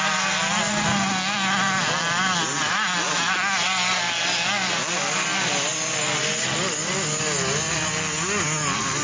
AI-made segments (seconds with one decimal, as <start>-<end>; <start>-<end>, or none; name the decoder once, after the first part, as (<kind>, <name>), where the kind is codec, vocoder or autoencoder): none